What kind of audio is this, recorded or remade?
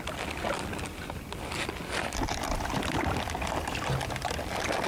recorded